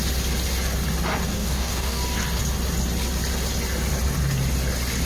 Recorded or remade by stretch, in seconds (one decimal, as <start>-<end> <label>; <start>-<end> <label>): 0.0-1.3 recorded; 1.3-2.0 remade; 2.0-5.1 recorded